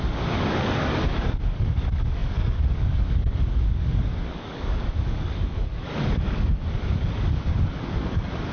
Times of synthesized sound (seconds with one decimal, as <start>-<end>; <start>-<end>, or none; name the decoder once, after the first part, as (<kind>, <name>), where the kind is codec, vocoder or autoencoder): 0.0-8.5 (codec, DAC)

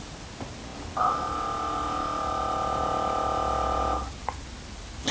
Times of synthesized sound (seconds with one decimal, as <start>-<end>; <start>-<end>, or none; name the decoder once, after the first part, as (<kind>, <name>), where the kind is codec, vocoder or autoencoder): none